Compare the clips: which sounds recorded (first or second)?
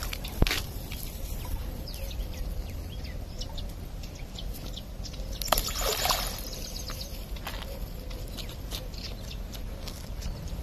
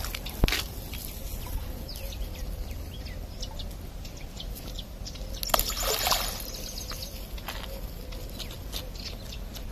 second